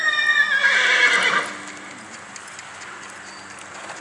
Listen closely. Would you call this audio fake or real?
real